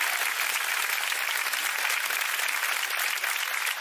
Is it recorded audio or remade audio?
recorded